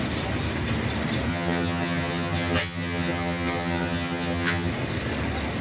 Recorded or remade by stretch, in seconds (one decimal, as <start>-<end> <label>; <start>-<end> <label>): 0.0-1.3 recorded; 1.3-4.7 remade; 4.7-5.6 recorded